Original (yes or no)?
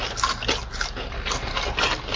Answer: yes